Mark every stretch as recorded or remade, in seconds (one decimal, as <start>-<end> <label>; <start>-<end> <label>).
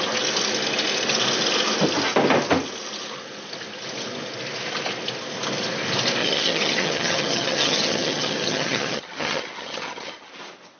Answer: 0.0-6.2 recorded; 6.2-10.3 remade; 10.3-10.8 recorded